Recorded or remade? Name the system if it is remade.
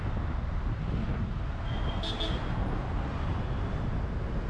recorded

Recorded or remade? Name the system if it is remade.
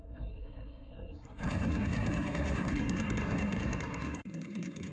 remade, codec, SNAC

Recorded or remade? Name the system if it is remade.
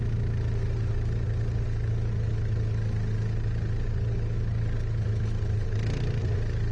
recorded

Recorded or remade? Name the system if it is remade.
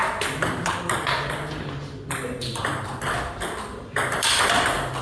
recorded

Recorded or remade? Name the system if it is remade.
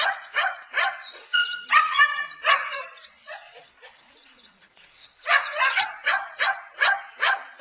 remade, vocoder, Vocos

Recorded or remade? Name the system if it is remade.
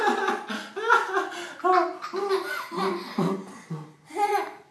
recorded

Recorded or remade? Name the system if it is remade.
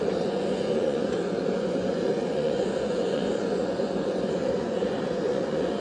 remade, vocoder, Vocos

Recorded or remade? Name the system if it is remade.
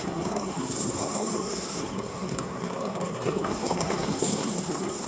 remade, codec, SNAC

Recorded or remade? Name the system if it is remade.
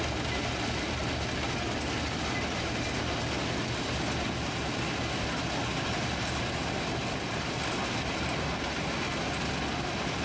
recorded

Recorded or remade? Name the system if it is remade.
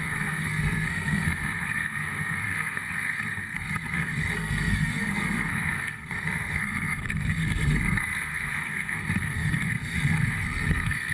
remade, codec, SNAC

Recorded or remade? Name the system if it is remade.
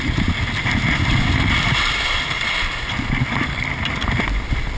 recorded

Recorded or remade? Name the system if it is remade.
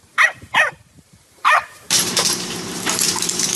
remade, vocoder, BigVGAN v2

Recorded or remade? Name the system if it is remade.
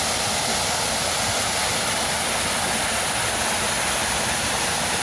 recorded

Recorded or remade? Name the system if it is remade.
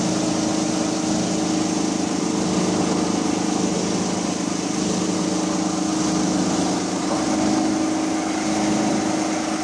recorded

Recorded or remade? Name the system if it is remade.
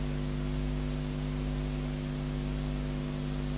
recorded